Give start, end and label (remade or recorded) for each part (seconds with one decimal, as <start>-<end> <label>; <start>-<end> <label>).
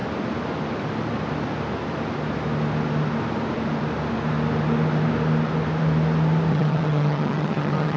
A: 0.0-6.5 recorded; 6.5-8.0 remade